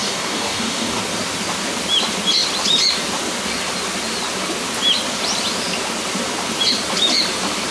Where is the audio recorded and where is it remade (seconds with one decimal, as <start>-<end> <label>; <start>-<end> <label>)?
0.0-1.0 remade; 1.0-7.7 recorded